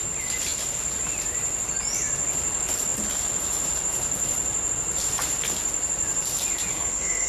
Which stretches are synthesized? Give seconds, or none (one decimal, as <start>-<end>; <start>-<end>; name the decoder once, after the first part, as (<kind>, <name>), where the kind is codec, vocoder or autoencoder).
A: 6.7-7.3 (codec, SNAC)